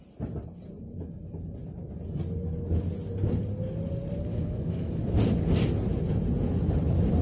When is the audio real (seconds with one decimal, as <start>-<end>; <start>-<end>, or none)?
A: 0.0-4.3; 5.0-7.2